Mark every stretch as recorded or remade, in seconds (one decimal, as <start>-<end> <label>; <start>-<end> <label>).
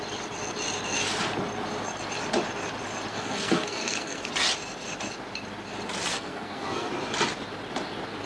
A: 0.0-3.1 recorded; 3.1-4.3 remade; 4.3-6.1 recorded; 6.1-6.9 remade; 6.9-8.2 recorded